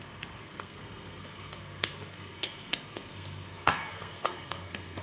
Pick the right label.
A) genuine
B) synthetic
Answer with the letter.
B